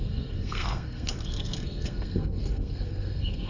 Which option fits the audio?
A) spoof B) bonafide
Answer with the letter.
A